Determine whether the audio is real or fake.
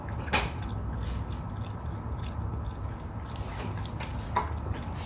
real